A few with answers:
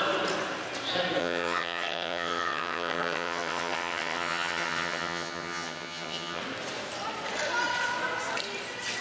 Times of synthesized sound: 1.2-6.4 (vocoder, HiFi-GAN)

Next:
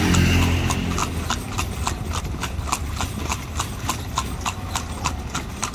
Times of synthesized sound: 1.0-2.2 (vocoder, BigVGAN v2); 3.3-4.2

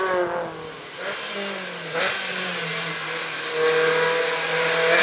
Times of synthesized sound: none

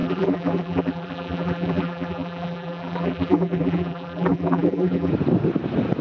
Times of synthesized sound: 0.0-5.1 (vocoder, BigVGAN v2)